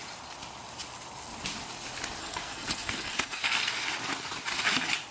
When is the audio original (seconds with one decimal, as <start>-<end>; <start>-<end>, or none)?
0.0-2.2; 3.7-5.1